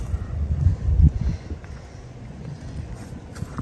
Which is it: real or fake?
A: fake